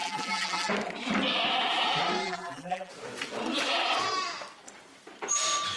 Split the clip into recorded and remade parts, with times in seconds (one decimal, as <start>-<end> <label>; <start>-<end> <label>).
0.0-0.7 remade; 0.7-2.2 recorded; 2.2-2.9 remade; 2.9-5.8 recorded